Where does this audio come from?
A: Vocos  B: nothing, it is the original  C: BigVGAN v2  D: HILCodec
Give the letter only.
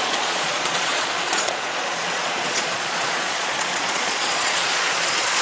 A